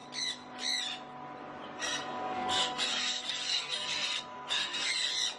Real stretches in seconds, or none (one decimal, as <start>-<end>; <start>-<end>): 0.0-1.7; 4.9-5.4

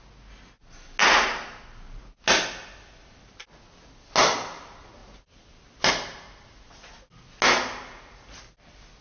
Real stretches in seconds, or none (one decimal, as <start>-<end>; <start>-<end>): 0.0-9.0

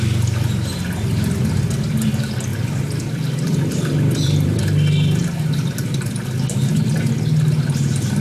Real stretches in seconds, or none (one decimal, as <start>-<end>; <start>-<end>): 0.0-2.5; 4.6-8.2

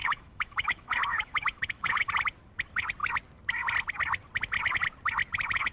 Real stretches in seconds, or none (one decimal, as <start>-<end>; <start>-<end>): 2.1-5.7

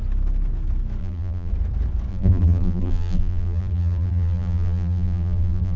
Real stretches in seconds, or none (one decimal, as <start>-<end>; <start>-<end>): 0.0-1.0; 1.5-2.1